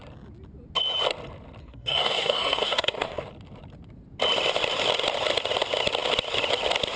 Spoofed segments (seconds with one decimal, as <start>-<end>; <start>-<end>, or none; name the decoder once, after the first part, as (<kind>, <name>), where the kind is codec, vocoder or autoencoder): 1.6-3.2 (codec, SNAC)